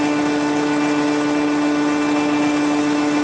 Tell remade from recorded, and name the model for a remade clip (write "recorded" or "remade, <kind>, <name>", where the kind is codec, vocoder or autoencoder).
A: recorded